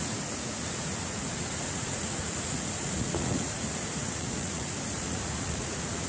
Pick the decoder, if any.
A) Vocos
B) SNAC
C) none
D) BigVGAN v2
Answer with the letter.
A